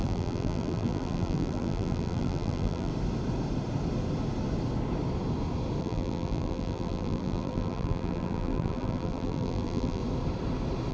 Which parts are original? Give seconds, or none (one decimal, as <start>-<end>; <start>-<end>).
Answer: 2.9-5.8; 10.0-10.9